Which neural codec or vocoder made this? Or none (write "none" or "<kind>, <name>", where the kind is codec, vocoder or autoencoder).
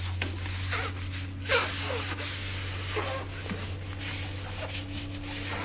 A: none